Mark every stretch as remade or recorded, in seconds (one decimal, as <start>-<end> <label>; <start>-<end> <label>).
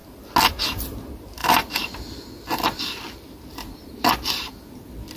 0.0-5.2 recorded